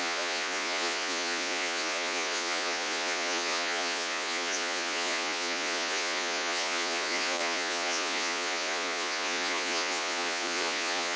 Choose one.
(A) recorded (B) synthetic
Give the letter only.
B